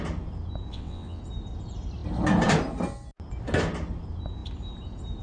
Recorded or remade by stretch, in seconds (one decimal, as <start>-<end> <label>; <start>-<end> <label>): 0.0-0.7 recorded; 0.7-1.2 remade; 1.2-5.2 recorded